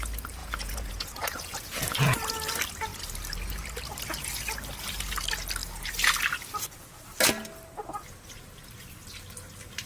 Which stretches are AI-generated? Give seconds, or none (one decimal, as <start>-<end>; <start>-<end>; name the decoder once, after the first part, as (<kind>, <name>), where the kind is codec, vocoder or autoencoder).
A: 0.4-1.8 (vocoder, Vocos)